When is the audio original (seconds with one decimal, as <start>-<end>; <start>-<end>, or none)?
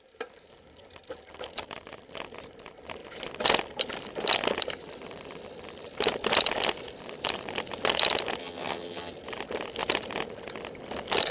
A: 0.0-8.4; 9.1-11.3